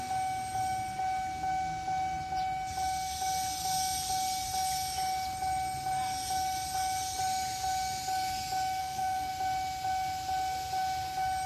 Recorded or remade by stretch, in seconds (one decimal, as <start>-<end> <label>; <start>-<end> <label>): 0.0-8.8 recorded; 8.8-9.3 remade; 9.3-11.5 recorded